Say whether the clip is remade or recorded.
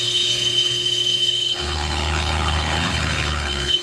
remade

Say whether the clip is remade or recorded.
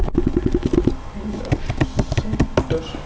recorded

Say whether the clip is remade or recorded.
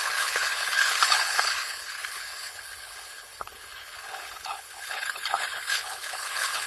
remade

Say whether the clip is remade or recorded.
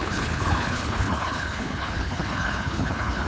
remade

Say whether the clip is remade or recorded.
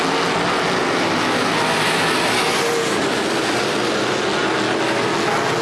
recorded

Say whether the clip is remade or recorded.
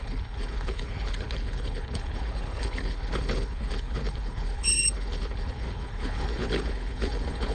remade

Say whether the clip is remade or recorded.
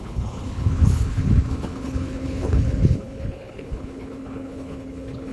remade